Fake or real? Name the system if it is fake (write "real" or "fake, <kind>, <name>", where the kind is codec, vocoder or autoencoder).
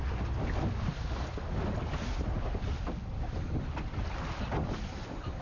real